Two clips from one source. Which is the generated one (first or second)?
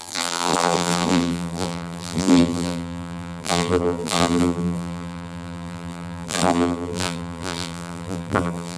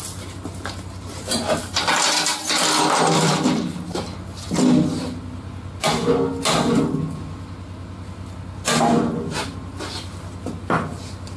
first